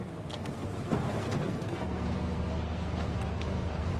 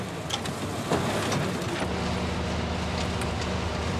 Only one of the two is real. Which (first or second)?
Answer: second